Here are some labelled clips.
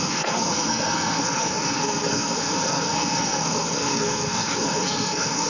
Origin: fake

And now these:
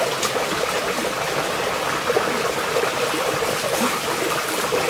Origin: real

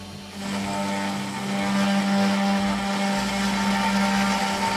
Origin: real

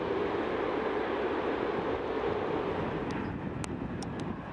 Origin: real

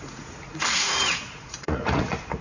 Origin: fake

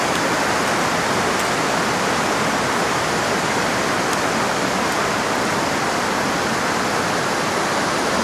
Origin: real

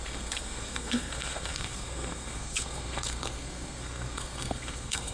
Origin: fake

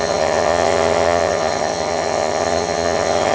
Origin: fake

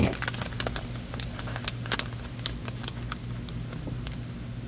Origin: real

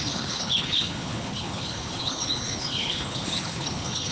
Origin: fake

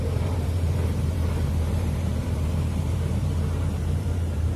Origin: fake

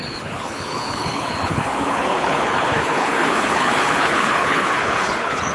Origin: fake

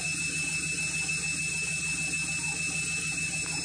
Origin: real